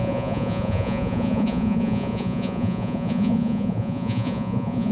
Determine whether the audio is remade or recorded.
remade